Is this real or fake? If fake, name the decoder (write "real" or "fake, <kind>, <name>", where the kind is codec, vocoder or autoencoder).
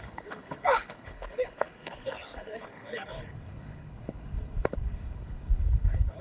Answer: fake, codec, HILCodec